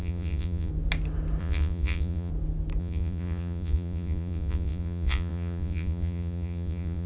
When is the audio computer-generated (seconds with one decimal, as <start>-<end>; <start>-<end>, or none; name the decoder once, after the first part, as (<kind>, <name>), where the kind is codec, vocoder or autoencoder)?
0.0-0.7 (vocoder, Vocos); 1.4-2.3; 2.8-7.1